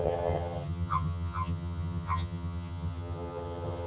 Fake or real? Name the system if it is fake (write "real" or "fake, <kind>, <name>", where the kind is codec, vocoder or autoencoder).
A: fake, vocoder, HiFi-GAN